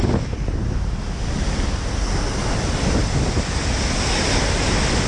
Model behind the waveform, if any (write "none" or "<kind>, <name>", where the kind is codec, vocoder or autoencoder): none